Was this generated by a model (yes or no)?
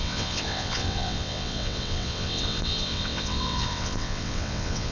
yes